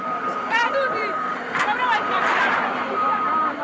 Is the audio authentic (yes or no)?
no